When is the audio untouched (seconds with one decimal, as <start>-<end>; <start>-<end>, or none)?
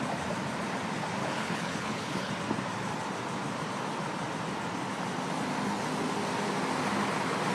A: 0.0-1.2; 2.3-7.5